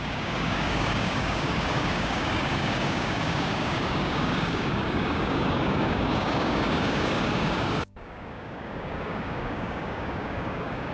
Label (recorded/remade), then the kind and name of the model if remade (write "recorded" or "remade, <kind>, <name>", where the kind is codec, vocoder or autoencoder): remade, codec, DAC